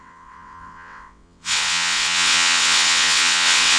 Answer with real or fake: fake